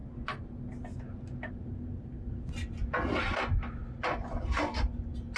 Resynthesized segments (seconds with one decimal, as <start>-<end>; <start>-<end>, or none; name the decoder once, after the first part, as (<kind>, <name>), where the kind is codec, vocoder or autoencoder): none